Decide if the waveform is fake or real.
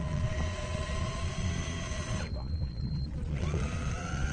fake